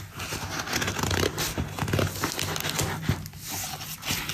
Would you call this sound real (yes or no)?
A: yes